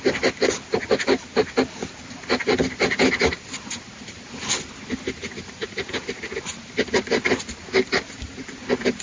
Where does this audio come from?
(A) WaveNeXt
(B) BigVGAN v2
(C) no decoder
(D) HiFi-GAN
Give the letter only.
C